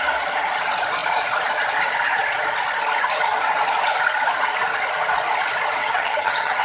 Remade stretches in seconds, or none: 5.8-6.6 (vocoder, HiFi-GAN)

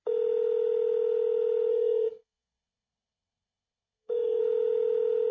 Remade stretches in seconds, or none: 1.7-4.4 (codec, SNAC)